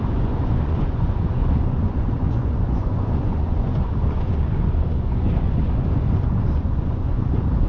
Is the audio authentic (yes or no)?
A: no